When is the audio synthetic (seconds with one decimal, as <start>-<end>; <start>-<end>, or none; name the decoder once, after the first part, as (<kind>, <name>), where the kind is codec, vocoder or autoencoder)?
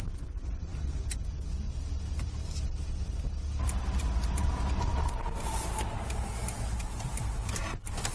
none